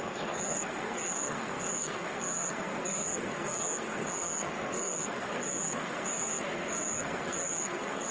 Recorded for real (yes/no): no